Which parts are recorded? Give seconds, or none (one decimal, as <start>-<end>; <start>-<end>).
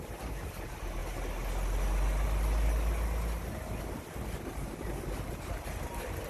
1.0-4.4